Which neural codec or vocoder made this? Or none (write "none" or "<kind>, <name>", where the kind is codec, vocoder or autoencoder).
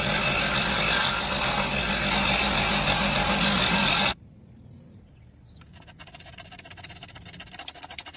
none